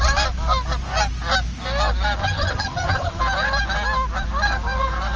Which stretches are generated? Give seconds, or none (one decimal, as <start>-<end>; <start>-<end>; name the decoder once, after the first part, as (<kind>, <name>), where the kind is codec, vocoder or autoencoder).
2.2-3.2 (vocoder, HiFi-GAN)